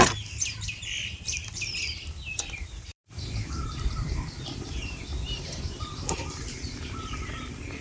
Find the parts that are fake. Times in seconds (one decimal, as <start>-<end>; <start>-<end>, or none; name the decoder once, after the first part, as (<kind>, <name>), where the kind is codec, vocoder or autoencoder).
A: 2.9-5.8 (vocoder, BigVGAN v2)